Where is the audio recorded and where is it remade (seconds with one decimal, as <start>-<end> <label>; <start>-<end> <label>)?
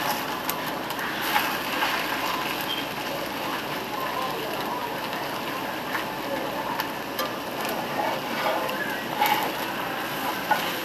0.0-10.8 recorded